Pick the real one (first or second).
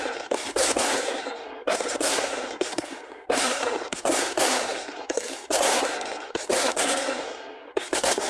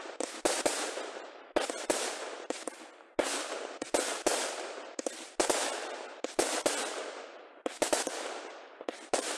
second